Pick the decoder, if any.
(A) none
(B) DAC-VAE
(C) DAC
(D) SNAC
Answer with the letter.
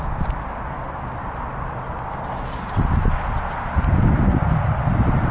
A